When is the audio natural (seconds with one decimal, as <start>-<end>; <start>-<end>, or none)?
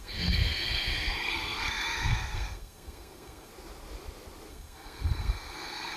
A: 3.5-4.5